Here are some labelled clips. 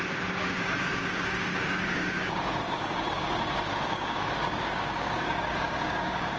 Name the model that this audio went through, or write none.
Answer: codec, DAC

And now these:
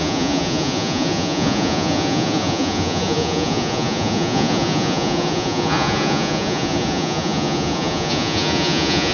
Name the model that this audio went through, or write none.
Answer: vocoder, Vocos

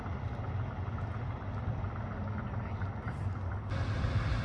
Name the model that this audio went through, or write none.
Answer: none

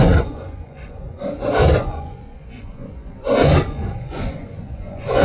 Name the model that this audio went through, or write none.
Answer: vocoder, Vocos